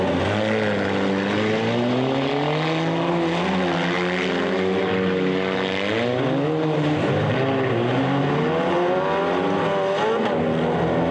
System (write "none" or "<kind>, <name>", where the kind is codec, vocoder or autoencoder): none